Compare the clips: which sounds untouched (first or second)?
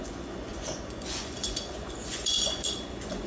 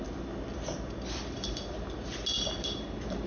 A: second